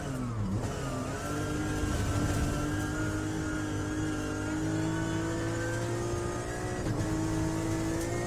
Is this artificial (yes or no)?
no